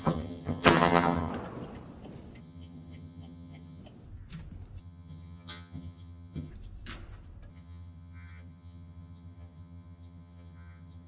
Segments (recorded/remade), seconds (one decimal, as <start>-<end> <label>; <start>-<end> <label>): 0.0-1.3 remade; 1.3-2.4 recorded; 2.4-3.8 remade; 3.8-4.8 recorded; 4.8-6.5 remade; 6.5-7.5 recorded; 7.5-11.1 remade